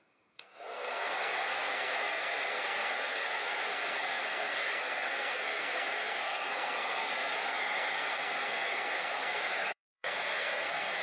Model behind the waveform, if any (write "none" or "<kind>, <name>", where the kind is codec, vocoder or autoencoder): codec, SNAC